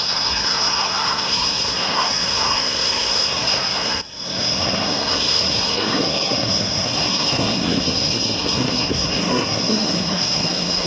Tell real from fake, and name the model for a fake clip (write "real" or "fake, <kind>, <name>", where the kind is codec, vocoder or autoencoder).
fake, codec, SNAC